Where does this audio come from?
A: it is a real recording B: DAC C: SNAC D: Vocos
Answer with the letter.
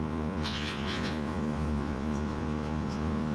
D